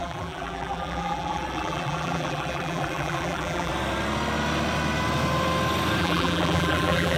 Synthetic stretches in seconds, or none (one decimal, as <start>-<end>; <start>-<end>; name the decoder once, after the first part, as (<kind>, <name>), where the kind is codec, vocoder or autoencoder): 0.0-3.7 (vocoder, BigVGAN v2); 6.0-7.2